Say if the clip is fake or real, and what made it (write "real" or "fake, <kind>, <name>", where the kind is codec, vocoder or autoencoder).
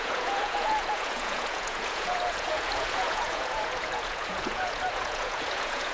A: fake, vocoder, Vocos